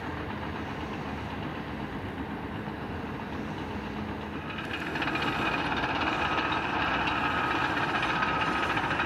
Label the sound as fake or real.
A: real